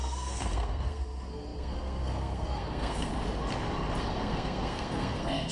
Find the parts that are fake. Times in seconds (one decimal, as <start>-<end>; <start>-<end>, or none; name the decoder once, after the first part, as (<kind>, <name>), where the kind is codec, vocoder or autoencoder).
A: 0.0-3.1 (codec, SNAC); 4.0-5.5